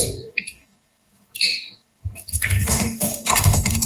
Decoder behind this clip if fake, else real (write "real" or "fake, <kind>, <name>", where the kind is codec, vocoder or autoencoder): fake, codec, DAC